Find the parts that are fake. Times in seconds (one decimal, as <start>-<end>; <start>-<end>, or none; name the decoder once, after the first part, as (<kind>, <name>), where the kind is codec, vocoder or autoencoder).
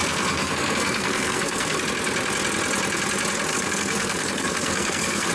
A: 0.0-1.8 (codec, SNAC); 3.5-5.3